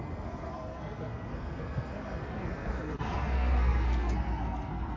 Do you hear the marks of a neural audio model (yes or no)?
yes